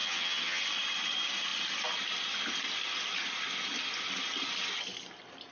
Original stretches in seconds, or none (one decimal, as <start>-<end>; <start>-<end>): 0.6-5.5

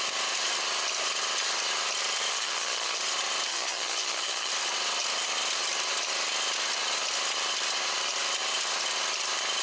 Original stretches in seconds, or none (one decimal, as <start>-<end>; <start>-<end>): 0.0-2.3; 3.0-3.5; 4.5-9.6

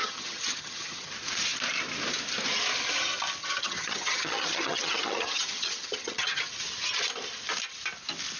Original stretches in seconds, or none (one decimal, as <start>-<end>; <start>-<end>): 1.1-3.4; 6.5-8.4

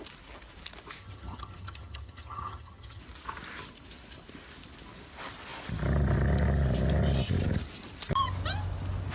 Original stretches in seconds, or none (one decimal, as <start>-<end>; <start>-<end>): 0.0-1.0; 3.0-9.1

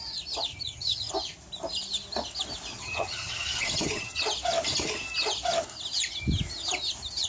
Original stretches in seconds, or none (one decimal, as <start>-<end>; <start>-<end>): 0.0-0.5; 1.1-2.7; 4.2-7.3